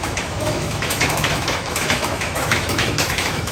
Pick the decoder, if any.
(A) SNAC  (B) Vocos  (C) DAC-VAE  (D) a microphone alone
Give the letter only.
C